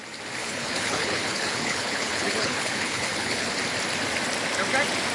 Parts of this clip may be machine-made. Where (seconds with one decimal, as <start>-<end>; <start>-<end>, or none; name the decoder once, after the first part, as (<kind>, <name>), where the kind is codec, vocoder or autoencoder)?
0.4-3.5 (codec, HILCodec)

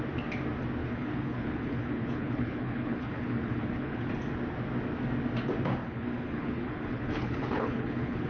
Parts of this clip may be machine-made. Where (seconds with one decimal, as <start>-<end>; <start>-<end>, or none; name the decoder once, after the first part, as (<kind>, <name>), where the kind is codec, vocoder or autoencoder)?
0.8-4.1 (codec, HILCodec); 5.8-8.3

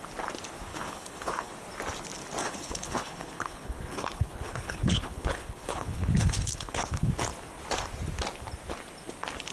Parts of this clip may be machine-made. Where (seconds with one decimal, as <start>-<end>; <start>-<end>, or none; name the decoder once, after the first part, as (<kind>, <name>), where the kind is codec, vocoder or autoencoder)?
0.7-1.5 (codec, HILCodec); 2.4-7.1

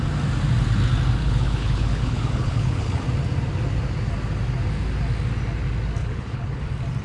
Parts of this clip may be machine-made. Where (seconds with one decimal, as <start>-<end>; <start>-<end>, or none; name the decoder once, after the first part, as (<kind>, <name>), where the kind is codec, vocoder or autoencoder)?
1.2-3.0 (codec, HILCodec); 6.0-6.6

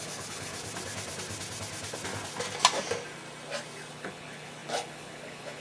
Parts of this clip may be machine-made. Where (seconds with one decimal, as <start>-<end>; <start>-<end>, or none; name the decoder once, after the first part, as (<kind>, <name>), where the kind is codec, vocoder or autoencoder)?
0.0-0.5 (codec, HILCodec); 3.9-5.6

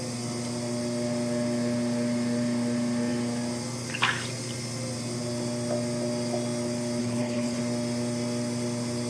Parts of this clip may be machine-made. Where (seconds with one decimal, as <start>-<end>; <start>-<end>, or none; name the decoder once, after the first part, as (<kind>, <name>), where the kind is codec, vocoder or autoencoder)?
7.0-7.6 (codec, HILCodec)